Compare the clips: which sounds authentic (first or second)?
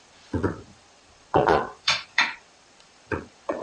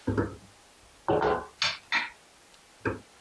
second